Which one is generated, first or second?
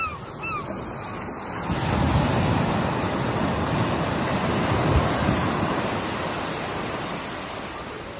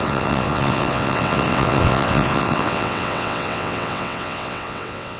second